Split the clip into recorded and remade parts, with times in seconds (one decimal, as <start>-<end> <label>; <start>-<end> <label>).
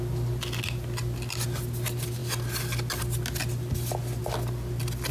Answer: 0.0-5.1 recorded